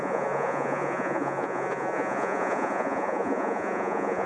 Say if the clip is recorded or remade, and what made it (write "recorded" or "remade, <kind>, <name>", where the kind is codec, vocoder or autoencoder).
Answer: remade, vocoder, Vocos